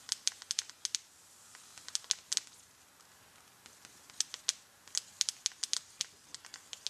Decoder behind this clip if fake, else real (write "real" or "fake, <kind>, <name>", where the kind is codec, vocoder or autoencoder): real